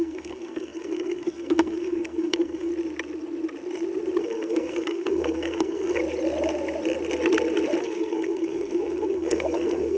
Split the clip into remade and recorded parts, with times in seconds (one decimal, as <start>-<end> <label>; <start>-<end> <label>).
0.0-2.7 remade; 2.7-4.2 recorded; 4.2-6.0 remade; 6.0-7.8 recorded; 7.8-10.0 remade